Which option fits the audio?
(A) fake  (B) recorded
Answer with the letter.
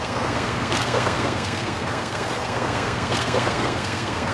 A